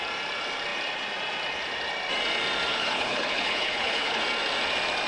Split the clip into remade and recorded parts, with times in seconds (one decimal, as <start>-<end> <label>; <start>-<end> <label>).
0.0-2.7 recorded; 2.7-4.2 remade; 4.2-5.1 recorded